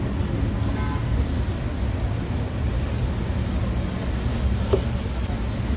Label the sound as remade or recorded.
recorded